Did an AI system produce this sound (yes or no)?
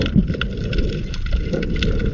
no